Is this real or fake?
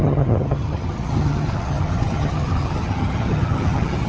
fake